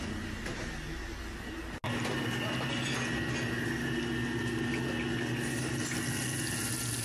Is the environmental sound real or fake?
real